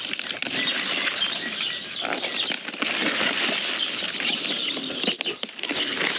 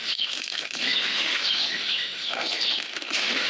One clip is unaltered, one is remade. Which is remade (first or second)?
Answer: second